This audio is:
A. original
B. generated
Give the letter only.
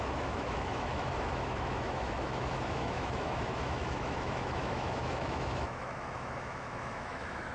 B